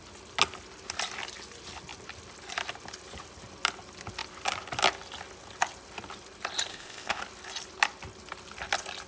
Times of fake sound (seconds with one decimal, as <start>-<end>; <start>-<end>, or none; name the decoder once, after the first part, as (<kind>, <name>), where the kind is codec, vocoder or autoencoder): 6.7-7.2 (codec, ZipCodec)